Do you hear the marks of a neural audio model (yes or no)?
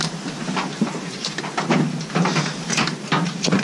yes